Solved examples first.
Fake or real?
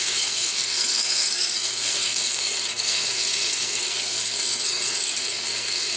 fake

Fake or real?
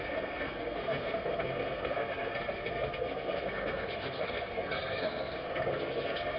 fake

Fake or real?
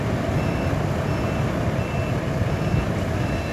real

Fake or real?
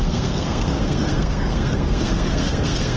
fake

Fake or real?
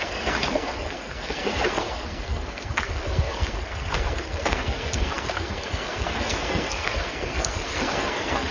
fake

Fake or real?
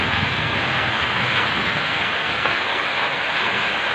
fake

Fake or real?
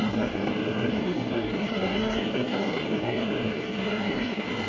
fake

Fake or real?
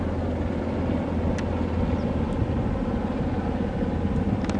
real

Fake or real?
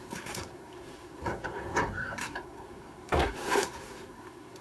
fake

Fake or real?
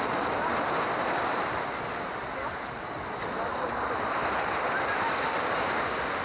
real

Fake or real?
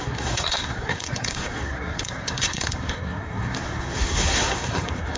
fake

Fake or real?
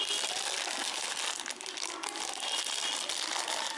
real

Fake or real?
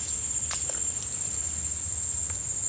real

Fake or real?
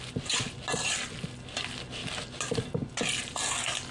real